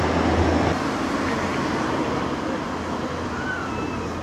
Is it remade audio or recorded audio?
recorded